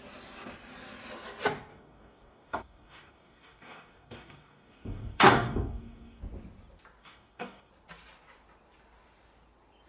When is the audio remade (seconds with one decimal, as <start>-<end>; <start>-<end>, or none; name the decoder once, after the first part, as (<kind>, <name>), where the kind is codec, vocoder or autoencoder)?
1.7-6.2 (codec, DAC); 7.0-7.7